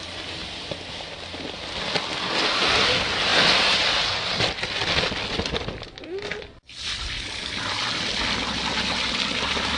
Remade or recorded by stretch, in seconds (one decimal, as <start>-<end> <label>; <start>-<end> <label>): 0.0-9.8 recorded